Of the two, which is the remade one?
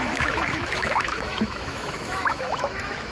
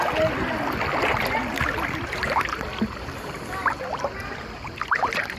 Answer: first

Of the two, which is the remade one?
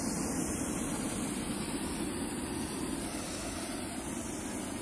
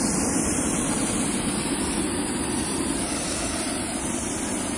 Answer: second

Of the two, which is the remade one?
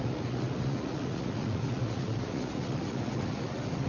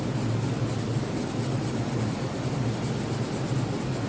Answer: first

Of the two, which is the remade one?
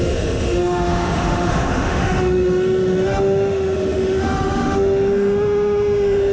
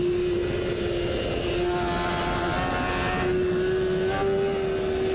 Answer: first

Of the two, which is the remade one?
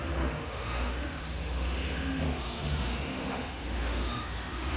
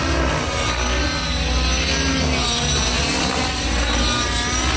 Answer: first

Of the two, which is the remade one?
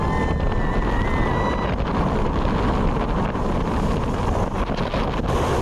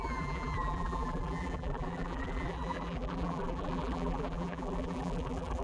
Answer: second